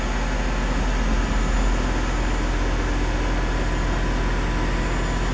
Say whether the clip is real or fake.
real